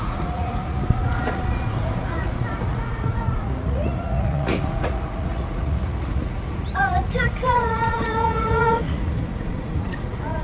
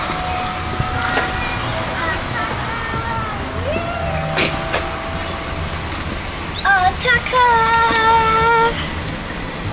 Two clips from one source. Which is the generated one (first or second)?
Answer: first